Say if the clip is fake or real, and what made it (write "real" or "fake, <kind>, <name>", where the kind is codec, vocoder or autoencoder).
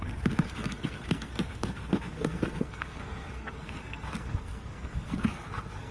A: fake, codec, SNAC